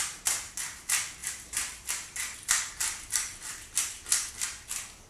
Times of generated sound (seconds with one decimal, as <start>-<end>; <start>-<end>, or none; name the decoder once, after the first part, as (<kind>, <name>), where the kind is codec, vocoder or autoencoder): 1.2-4.3 (vocoder, BigVGAN v2)